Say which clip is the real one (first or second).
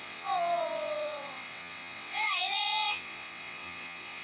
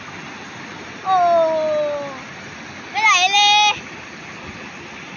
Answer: second